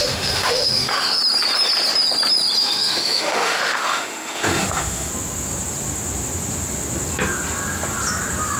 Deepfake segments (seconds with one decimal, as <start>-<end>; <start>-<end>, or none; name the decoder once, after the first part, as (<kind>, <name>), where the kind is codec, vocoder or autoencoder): 0.0-1.2 (autoencoder, DAC-VAE); 2.6-5.1